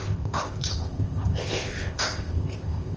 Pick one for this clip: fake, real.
fake